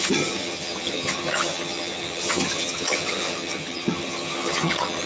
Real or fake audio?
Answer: fake